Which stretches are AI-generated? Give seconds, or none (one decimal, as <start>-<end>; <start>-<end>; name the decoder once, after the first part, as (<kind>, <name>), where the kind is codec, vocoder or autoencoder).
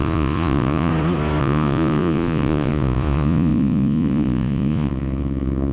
0.0-0.9 (vocoder, Vocos); 1.4-5.7